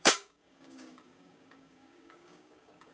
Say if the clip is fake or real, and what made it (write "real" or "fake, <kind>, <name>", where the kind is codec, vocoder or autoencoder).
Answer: fake, codec, DAC